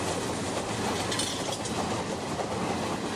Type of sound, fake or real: real